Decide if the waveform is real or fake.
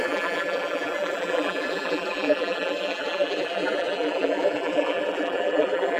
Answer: fake